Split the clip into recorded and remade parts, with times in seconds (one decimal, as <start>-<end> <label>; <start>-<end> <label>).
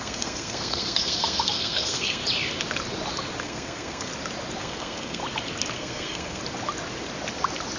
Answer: 0.0-2.2 remade; 2.2-3.4 recorded; 3.4-4.1 remade; 4.1-4.6 recorded; 4.6-5.2 remade; 5.2-5.7 recorded; 5.7-6.4 remade; 6.4-7.8 recorded